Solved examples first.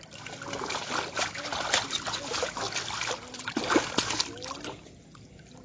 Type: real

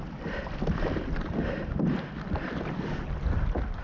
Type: fake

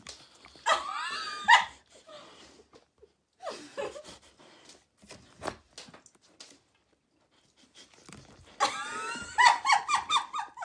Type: real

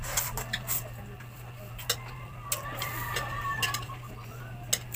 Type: real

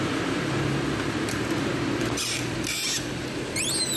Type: real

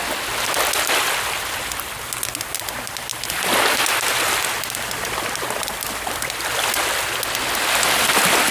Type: real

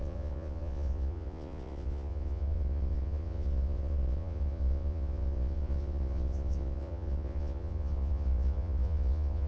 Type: fake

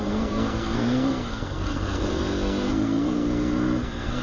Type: fake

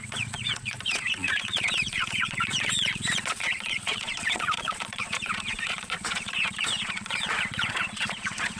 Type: fake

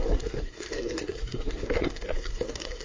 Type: fake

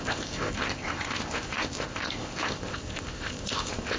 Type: fake